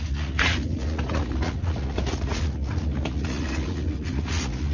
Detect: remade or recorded remade